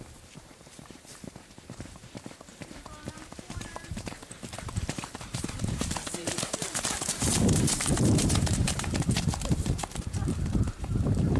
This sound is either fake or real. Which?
fake